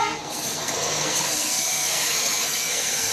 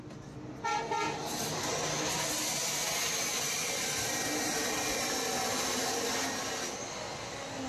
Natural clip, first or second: second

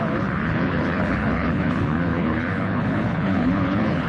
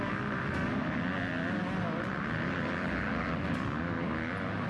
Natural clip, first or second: second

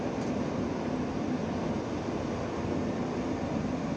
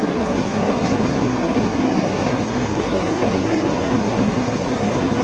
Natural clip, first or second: first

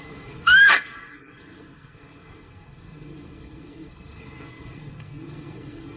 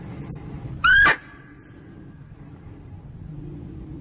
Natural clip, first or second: second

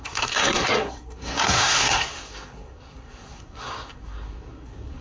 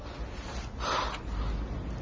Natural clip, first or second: second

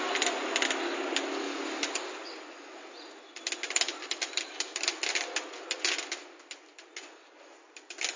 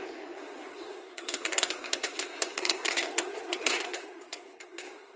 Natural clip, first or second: first